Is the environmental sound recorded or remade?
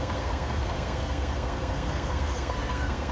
remade